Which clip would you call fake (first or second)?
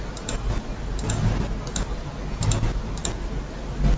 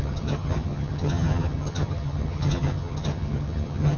second